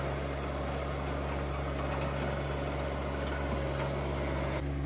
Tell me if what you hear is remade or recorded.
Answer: recorded